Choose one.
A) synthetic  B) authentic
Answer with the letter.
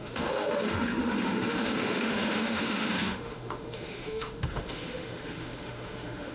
A